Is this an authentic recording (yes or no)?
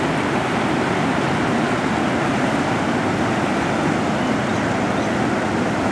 yes